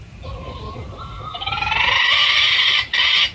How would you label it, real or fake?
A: real